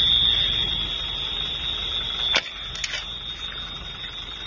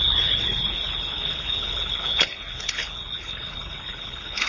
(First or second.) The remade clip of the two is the second